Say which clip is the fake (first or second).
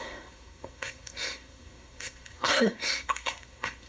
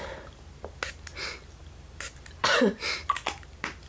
first